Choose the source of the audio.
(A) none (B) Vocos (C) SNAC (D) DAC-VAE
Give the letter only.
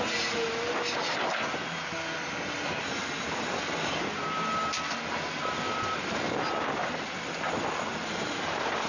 A